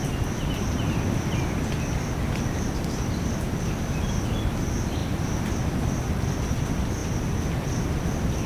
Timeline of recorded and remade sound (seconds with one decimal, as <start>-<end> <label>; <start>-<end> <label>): 0.0-2.4 recorded; 2.4-5.0 remade; 5.0-6.0 recorded; 6.0-8.5 remade

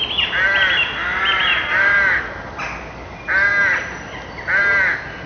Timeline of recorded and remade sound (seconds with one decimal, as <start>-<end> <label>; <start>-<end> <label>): 0.0-3.5 recorded; 3.5-4.6 remade; 4.6-5.3 recorded

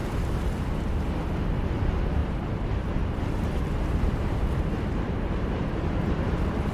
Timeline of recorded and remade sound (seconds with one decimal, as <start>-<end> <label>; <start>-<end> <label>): 0.0-2.2 recorded; 2.2-6.2 remade; 6.2-6.7 recorded

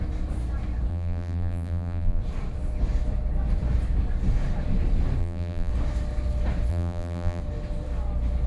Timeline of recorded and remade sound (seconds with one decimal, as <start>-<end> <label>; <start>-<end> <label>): 0.0-0.9 recorded; 0.9-2.2 remade; 2.2-5.2 recorded; 5.2-5.7 remade; 5.7-6.7 recorded; 6.7-7.4 remade; 7.4-8.5 recorded